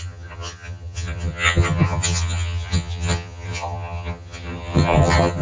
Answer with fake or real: fake